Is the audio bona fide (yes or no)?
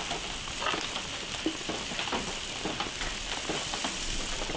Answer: yes